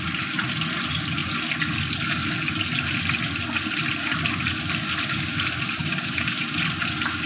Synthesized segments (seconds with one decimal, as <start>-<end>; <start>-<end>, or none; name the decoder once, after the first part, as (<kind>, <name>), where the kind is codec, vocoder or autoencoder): 5.8-6.4 (codec, DAC)